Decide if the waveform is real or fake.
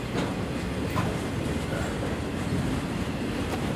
real